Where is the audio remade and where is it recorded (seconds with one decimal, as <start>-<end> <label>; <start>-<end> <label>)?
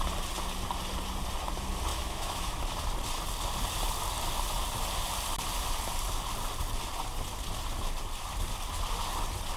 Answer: 0.0-1.9 recorded; 1.9-2.6 remade; 2.6-9.6 recorded